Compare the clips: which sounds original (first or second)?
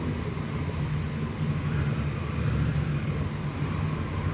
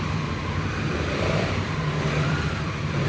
first